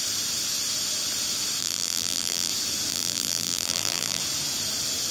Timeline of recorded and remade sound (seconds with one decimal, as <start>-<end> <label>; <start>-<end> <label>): 0.0-1.6 recorded; 1.6-2.5 remade; 2.5-2.9 recorded; 2.9-4.2 remade; 4.2-5.1 recorded